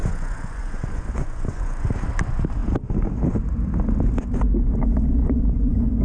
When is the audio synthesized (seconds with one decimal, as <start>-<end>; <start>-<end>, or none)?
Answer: 0.0-1.9; 5.2-6.0